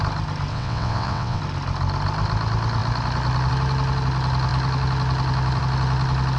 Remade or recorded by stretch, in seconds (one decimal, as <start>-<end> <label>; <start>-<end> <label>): 0.0-0.5 recorded; 0.5-1.4 remade; 1.4-6.4 recorded